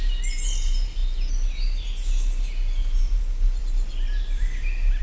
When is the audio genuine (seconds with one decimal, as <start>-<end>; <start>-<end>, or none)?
0.0-5.0